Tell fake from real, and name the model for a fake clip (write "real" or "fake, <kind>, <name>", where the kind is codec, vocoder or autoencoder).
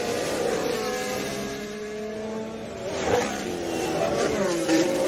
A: real